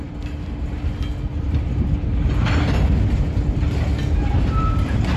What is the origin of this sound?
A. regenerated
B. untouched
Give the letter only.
B